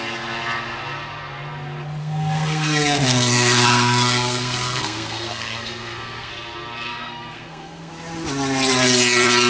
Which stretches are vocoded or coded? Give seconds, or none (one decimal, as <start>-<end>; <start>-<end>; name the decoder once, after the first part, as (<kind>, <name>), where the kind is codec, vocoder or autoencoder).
2.0-6.3 (codec, SNAC); 6.9-7.9